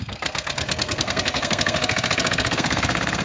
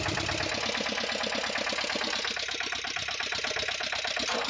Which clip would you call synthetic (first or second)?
first